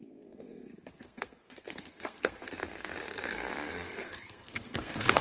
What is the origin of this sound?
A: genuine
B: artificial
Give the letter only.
B